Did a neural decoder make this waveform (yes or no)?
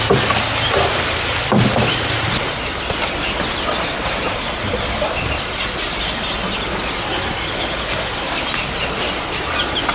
no